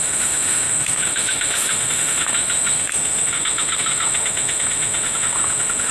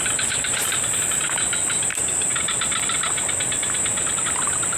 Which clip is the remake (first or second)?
first